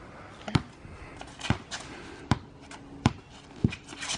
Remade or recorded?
recorded